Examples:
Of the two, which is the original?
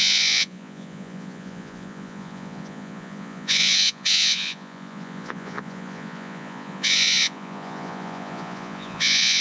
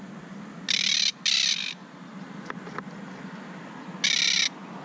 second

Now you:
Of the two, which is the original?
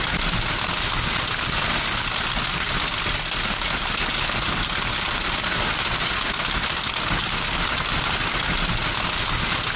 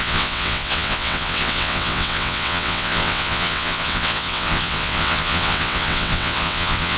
first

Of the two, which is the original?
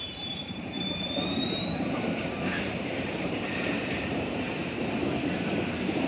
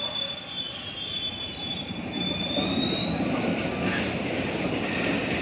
second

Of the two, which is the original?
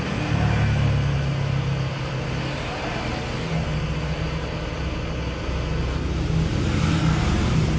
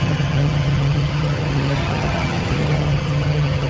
first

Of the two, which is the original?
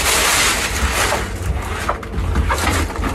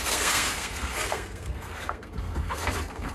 first